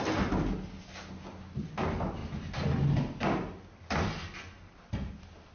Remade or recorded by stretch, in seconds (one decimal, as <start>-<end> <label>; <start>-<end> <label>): 0.0-5.5 recorded